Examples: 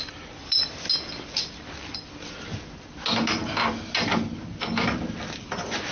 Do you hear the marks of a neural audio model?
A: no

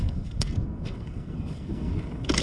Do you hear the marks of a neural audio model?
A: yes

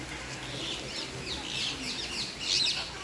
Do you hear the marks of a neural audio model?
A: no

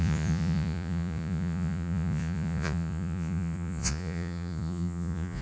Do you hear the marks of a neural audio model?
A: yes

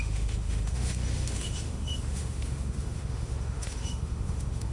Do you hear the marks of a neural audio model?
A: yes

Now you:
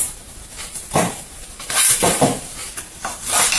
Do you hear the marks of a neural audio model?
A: yes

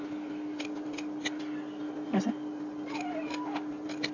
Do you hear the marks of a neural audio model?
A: no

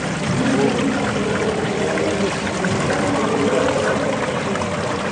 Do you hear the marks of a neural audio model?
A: no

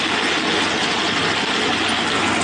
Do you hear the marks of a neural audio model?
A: no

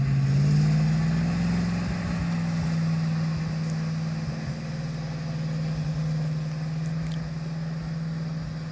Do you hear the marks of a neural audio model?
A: no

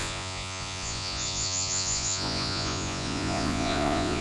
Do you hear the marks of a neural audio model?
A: yes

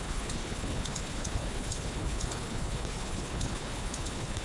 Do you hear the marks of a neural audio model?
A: yes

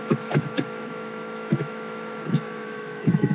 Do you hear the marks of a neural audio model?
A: yes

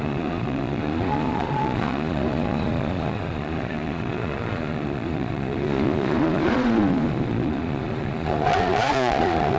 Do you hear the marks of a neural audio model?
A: yes